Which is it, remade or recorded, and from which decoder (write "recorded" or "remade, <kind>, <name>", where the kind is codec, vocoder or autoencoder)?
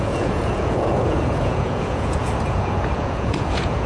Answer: remade, vocoder, Vocos